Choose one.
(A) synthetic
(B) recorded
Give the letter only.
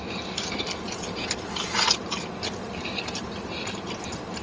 B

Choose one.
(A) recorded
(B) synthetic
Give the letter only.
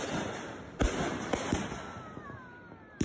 A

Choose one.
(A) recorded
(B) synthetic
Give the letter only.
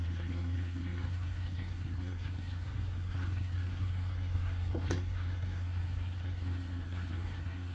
B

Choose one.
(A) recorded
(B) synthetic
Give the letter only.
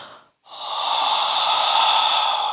A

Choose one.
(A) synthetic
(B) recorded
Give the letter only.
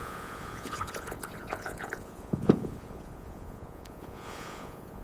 A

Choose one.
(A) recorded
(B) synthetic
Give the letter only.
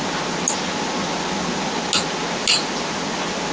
A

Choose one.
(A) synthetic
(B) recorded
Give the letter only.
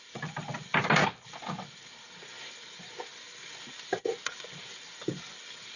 B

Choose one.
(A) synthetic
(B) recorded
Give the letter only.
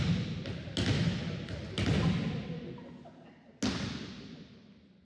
B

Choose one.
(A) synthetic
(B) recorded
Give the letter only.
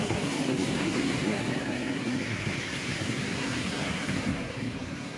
A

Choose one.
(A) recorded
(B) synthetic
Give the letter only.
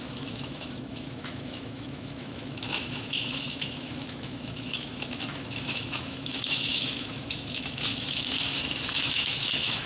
B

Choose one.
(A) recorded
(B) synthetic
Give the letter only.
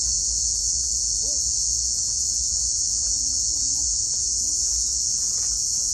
B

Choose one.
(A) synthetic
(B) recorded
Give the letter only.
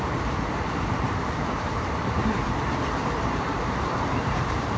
A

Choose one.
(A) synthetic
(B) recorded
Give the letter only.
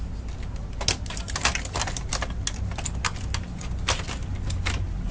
B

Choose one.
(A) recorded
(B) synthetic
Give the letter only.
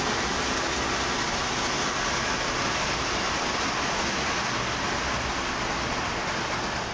A